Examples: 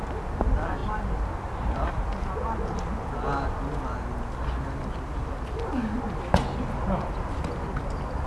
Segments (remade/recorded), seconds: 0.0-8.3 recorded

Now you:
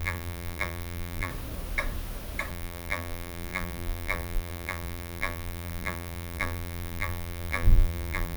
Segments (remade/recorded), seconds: 0.0-1.3 remade; 1.3-2.5 recorded; 2.5-8.4 remade

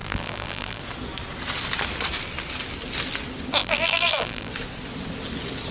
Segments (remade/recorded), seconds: 0.0-0.8 remade; 0.8-3.6 recorded; 3.6-4.5 remade; 4.5-5.7 recorded

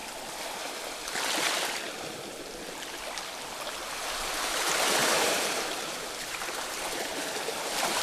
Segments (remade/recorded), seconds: 0.0-5.0 recorded; 5.0-7.6 remade; 7.6-8.0 recorded

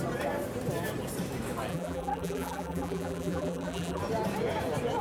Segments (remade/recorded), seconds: 0.0-1.7 recorded; 1.7-4.0 remade; 4.0-5.0 recorded